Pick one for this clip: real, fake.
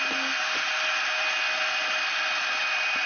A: real